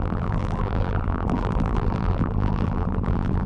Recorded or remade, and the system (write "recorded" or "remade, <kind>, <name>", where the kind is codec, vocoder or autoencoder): remade, vocoder, BigVGAN v2